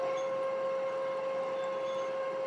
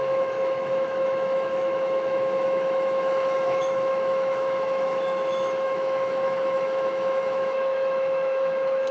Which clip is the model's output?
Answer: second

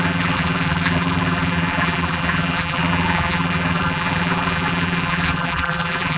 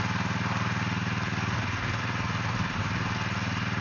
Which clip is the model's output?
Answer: first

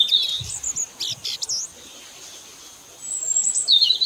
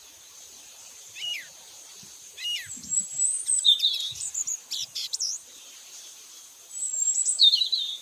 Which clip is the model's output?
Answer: second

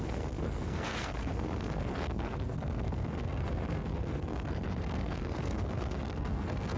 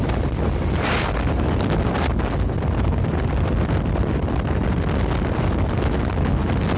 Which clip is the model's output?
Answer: first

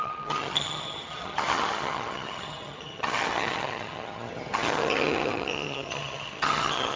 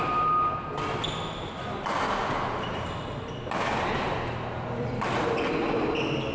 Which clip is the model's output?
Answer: first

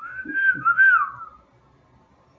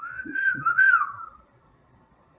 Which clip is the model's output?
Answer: second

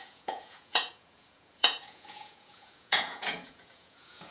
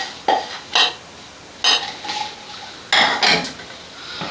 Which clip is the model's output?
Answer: first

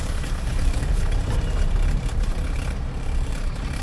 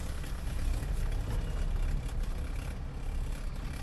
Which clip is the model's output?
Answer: first